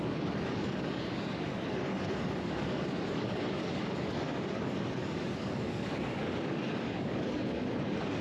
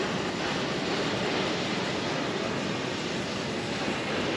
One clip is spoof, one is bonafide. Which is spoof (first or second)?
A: first